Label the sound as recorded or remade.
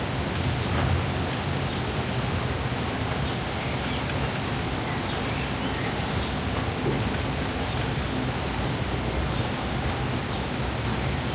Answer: recorded